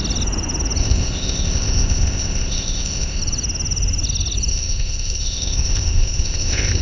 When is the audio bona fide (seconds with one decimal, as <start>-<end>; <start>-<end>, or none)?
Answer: 0.0-0.8; 3.2-4.5